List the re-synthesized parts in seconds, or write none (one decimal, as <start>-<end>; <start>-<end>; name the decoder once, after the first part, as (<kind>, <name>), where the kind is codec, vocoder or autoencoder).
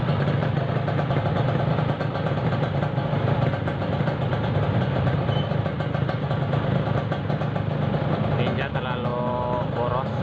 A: none